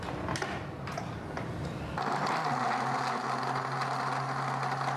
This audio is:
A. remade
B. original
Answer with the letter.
B